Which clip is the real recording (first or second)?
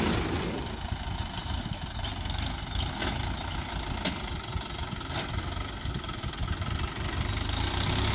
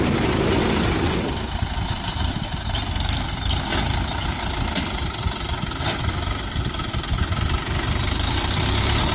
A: first